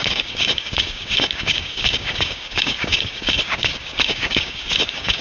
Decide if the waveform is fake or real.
fake